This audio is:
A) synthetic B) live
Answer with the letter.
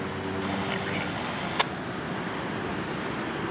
B